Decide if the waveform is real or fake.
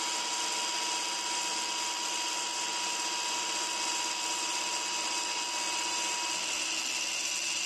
real